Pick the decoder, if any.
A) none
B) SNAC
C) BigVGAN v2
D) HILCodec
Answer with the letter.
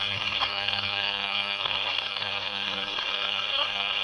B